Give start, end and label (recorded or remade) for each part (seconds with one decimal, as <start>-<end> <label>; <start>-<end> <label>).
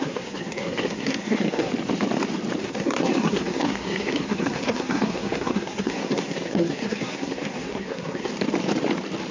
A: 0.0-1.7 remade; 1.7-2.6 recorded; 2.6-8.3 remade; 8.3-9.3 recorded